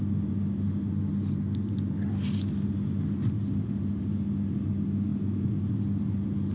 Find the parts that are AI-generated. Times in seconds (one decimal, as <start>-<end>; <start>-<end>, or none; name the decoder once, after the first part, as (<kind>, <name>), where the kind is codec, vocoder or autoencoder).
none